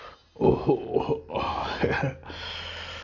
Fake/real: real